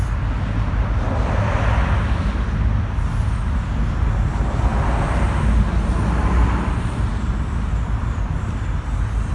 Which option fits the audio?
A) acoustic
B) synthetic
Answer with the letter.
A